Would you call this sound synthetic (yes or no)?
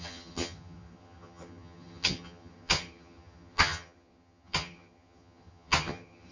yes